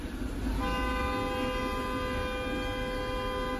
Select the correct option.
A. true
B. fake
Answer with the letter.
A